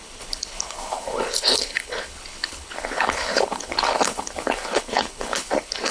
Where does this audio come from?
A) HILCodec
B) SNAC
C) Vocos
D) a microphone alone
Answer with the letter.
A